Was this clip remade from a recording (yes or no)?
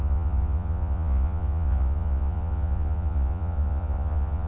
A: yes